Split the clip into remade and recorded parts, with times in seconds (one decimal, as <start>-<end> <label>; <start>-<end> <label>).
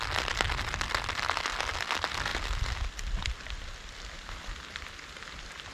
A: 0.0-5.7 recorded